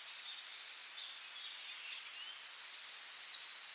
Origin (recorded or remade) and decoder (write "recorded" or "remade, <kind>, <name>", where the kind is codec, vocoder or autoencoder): recorded